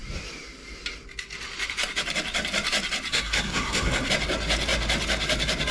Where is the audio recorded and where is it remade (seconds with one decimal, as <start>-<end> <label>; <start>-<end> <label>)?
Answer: 0.0-3.1 recorded; 3.1-4.1 remade; 4.1-5.7 recorded